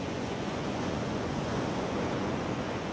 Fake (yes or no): yes